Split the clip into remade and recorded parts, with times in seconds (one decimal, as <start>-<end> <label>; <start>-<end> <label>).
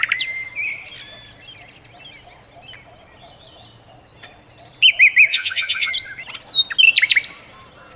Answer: 0.0-5.3 recorded; 5.3-5.9 remade; 5.9-8.0 recorded